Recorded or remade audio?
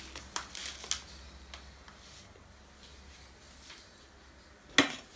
recorded